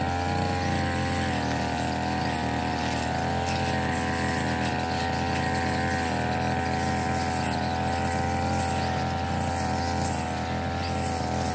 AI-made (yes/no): no